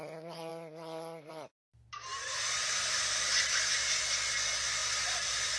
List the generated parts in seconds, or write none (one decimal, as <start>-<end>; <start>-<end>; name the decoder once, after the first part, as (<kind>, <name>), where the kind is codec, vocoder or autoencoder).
2.2-4.0 (vocoder, BigVGAN v2); 4.8-5.6